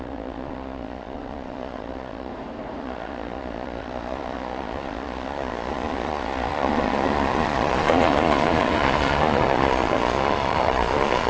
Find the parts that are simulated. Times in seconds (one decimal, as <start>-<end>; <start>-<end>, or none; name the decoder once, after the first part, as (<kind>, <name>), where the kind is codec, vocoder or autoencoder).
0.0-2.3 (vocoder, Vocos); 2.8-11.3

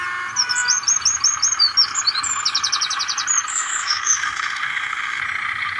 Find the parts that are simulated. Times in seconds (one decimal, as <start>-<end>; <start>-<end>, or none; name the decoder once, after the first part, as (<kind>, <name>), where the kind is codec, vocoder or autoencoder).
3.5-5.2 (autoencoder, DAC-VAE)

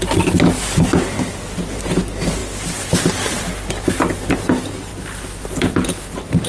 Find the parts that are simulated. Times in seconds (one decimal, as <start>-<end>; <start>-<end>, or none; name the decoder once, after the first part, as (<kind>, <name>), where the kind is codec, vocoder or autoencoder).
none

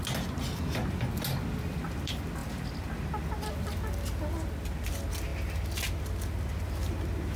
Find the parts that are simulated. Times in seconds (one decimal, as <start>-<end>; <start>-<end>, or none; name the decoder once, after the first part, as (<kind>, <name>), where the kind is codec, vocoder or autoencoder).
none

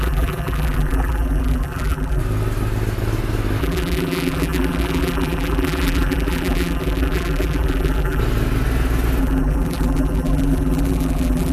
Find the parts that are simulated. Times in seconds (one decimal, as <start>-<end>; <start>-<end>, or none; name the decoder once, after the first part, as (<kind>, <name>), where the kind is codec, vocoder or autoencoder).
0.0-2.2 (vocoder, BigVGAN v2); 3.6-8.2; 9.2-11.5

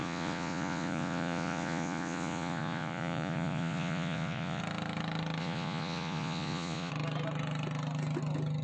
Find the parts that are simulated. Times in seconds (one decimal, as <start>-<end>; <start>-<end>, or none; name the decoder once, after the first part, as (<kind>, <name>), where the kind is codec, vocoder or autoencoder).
0.0-4.6 (vocoder, Vocos); 5.4-6.9

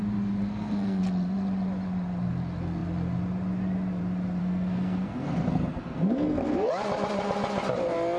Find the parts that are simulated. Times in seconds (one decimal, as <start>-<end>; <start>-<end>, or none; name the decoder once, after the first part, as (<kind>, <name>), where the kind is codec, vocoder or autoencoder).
0.4-1.0 (codec, SNAC); 4.4-6.7